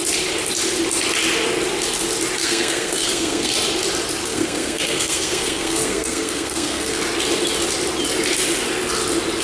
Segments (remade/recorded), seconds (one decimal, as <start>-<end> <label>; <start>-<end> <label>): 0.0-2.4 recorded; 2.4-3.5 remade; 3.5-4.2 recorded; 4.2-7.0 remade; 7.0-9.4 recorded